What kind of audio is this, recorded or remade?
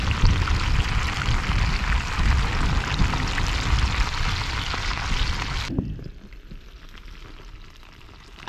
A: recorded